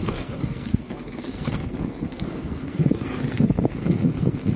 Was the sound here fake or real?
fake